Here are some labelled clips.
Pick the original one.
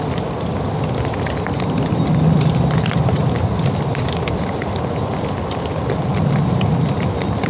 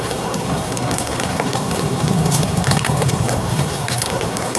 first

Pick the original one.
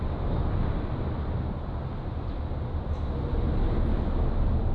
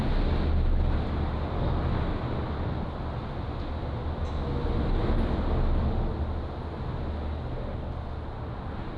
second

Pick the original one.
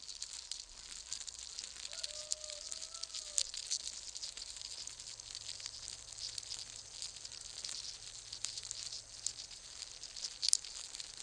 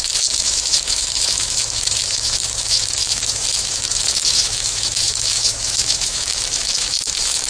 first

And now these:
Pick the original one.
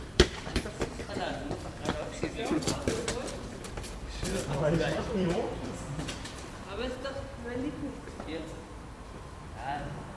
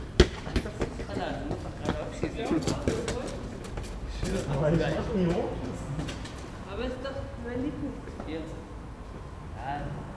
second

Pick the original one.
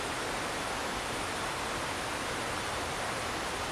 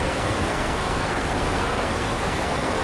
first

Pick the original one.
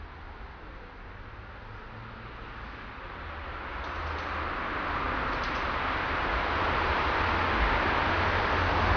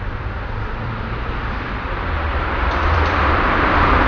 first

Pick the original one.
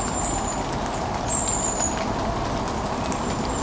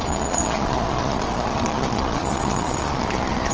first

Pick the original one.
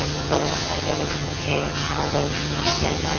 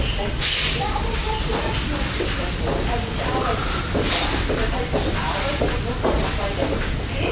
second